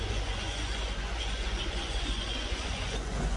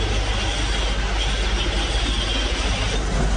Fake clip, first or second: first